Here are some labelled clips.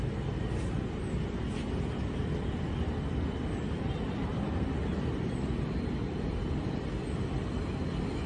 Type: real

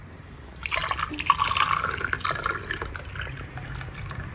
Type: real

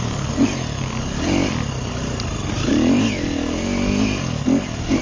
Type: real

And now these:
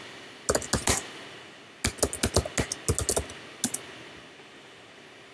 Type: real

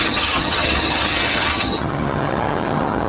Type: fake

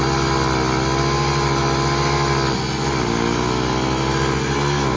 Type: real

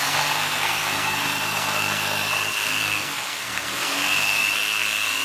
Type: fake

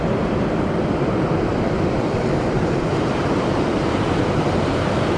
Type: fake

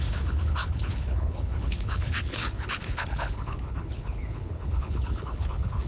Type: fake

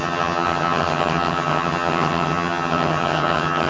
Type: fake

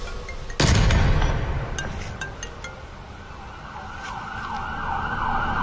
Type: real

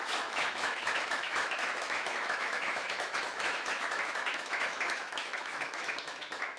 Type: fake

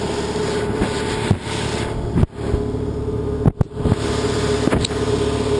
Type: real